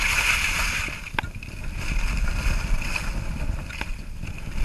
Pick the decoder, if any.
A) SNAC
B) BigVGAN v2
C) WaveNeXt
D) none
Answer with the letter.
D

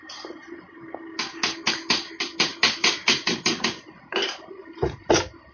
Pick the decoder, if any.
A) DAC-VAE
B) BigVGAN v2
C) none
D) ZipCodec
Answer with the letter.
B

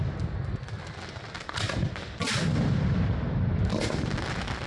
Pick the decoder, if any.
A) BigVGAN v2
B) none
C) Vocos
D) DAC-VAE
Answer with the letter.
B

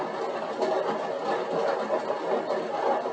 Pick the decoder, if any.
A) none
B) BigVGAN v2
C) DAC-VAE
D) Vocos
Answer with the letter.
A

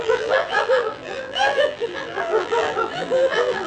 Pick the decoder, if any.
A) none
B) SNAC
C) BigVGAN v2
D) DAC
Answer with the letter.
C